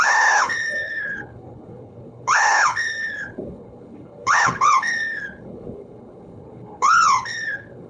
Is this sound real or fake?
fake